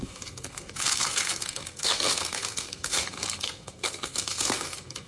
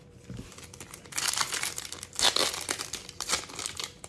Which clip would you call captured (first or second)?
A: second